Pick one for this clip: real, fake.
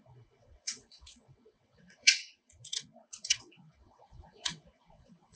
fake